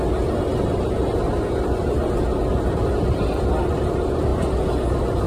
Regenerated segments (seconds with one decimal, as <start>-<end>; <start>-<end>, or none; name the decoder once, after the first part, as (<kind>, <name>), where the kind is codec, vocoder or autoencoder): 0.5-1.3 (vocoder, BigVGAN v2)